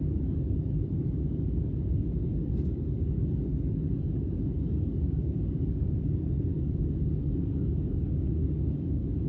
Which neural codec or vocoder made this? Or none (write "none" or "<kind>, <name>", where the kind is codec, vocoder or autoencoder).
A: codec, DAC